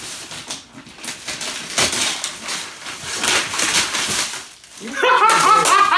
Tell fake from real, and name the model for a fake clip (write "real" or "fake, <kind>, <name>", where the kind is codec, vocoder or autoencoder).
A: real